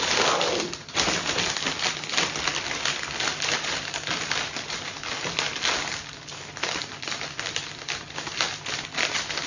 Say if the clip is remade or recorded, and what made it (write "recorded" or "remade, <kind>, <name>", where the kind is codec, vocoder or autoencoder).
recorded